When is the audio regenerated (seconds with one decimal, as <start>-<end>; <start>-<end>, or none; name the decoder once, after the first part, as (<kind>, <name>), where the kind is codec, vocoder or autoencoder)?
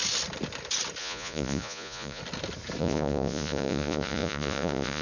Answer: 1.0-2.2 (vocoder, Vocos); 2.8-5.0